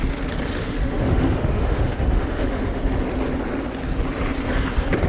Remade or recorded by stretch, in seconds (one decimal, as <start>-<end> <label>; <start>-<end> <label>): 0.0-0.6 recorded; 0.6-2.8 remade; 2.8-5.1 recorded